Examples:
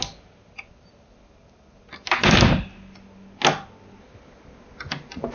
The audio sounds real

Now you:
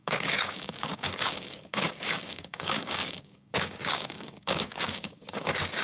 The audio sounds fake